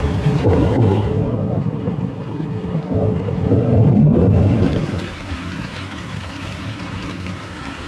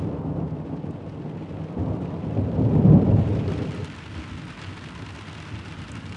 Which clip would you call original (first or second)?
second